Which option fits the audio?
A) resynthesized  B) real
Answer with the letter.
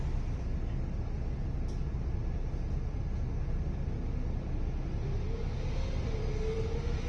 B